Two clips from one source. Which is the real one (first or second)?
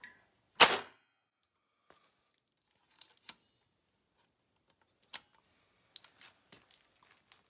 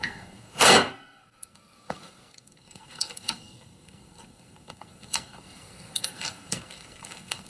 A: first